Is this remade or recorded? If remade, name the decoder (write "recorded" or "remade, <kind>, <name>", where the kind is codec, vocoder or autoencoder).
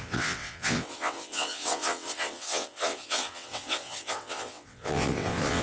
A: remade, vocoder, WaveNeXt